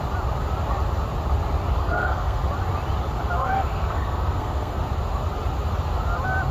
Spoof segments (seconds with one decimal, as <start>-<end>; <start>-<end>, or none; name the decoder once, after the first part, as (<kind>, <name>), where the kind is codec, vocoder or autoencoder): 1.8-2.4 (codec, SNAC); 3.4-4.8